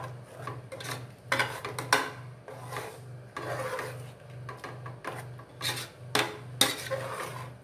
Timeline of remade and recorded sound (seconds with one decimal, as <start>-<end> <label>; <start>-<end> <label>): 0.0-7.6 recorded